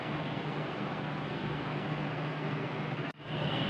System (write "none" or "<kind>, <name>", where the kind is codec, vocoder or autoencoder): codec, SNAC